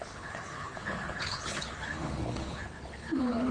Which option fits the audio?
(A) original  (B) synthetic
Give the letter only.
B